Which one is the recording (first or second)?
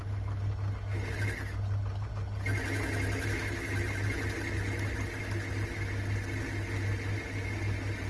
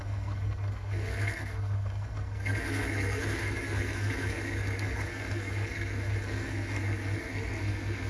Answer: first